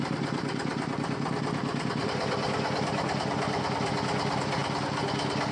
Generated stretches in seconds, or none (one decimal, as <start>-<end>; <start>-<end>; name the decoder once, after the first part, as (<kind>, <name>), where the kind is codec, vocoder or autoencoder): 0.0-0.7 (vocoder, BigVGAN v2); 1.9-4.6